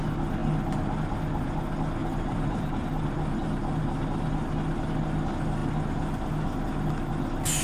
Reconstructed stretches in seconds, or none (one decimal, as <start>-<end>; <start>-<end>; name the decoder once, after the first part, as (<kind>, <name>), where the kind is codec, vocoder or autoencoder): 2.0-2.7 (vocoder, BigVGAN v2)